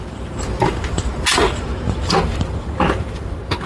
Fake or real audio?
fake